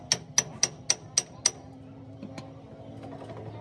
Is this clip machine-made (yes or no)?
no